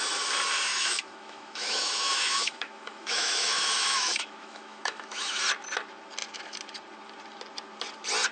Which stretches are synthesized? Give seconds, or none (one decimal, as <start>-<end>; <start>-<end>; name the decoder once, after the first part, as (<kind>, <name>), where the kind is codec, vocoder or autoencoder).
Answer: 0.7-5.4 (autoencoder, DAC-VAE)